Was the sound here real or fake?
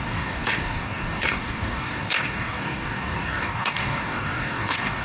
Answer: fake